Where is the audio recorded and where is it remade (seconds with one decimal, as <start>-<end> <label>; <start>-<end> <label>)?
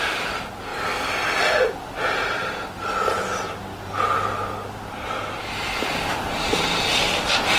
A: 0.0-7.6 recorded